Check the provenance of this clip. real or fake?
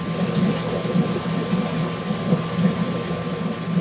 real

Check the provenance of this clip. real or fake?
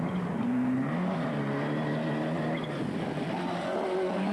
real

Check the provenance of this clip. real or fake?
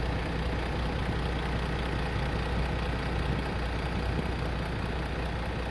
real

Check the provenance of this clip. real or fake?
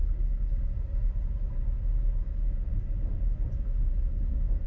real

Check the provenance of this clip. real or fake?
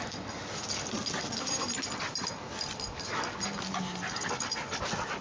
real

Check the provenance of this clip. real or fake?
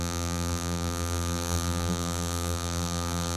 fake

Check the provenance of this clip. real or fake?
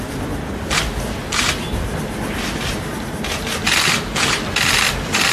real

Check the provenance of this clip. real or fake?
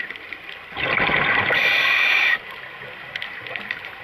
real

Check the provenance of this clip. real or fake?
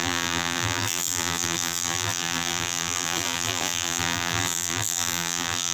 fake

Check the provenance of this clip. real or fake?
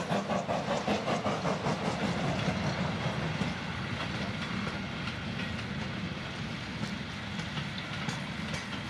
real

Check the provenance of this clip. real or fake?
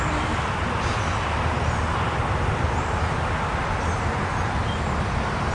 fake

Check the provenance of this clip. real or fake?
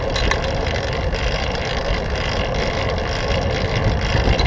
fake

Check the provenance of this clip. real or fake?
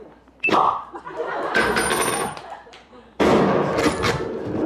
fake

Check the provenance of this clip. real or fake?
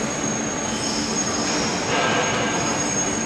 real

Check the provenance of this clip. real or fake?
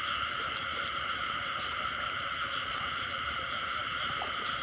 fake